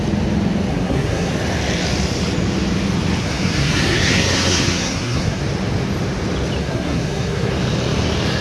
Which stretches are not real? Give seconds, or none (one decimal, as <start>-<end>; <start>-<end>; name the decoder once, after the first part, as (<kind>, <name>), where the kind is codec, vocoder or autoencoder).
0.7-1.3 (codec, SNAC); 3.2-5.4; 6.6-7.5